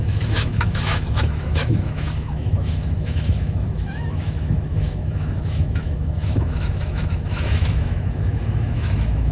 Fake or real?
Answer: fake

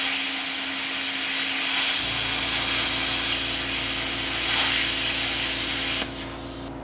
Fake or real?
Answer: real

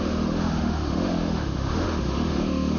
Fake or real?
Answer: fake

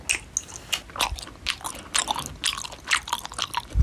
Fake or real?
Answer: real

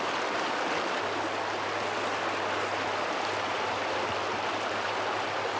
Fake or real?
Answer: real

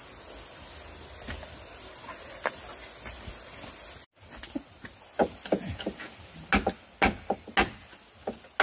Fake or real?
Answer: real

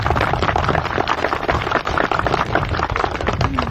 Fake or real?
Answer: real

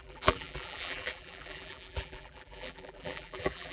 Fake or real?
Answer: fake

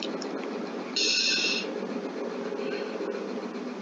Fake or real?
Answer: real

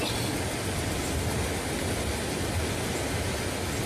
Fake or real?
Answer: real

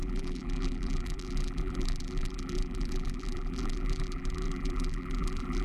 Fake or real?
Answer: fake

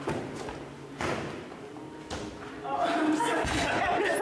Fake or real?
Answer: real